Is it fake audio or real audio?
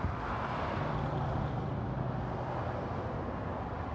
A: real